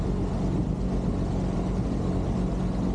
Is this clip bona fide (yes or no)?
yes